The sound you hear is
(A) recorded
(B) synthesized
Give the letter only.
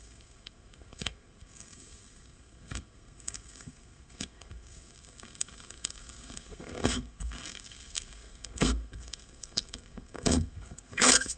B